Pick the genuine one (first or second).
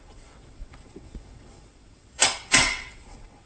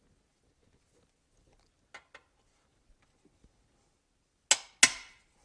second